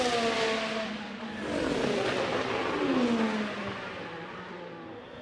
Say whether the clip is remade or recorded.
recorded